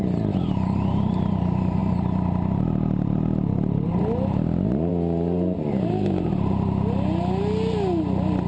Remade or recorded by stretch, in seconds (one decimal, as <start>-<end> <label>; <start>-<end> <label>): 0.0-8.5 recorded